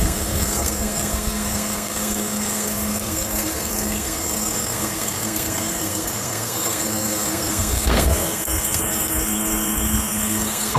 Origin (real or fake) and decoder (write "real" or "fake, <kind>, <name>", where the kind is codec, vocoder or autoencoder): fake, codec, SNAC